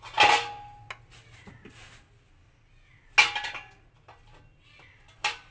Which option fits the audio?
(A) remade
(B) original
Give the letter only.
B